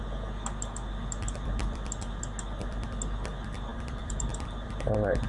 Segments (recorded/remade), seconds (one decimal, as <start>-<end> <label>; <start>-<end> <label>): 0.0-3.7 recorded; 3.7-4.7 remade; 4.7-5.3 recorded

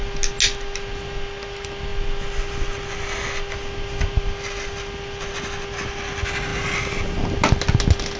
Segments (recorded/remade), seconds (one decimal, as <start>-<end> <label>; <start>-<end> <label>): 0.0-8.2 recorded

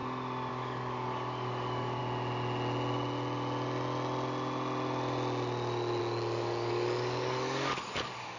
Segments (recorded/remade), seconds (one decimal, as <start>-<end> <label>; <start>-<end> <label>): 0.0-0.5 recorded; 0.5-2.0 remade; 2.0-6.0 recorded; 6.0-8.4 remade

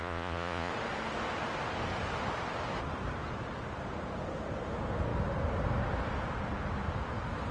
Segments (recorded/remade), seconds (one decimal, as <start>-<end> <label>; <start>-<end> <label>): 0.0-0.7 remade; 0.7-7.5 recorded